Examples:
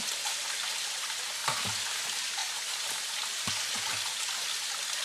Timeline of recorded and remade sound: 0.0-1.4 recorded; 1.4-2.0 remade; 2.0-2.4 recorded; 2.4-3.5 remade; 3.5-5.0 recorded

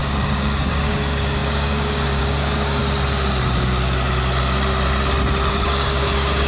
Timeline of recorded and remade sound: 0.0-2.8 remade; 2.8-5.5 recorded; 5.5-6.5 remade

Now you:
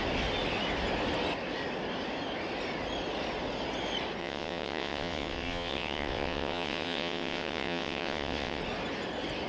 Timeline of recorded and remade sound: 0.0-4.2 recorded; 4.2-8.6 remade; 8.6-9.5 recorded

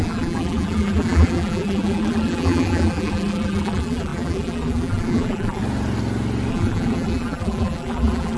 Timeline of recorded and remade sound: 0.0-5.6 remade; 5.6-6.5 recorded; 6.5-8.4 remade

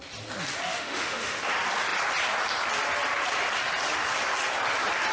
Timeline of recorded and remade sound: 0.0-0.7 recorded; 0.7-1.4 remade; 1.4-5.1 recorded

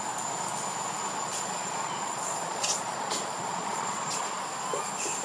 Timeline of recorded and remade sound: 0.0-1.3 recorded; 1.3-4.4 remade; 4.4-5.2 recorded

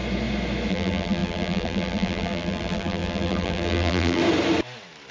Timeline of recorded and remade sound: 0.0-0.7 recorded; 0.7-4.2 remade; 4.2-5.1 recorded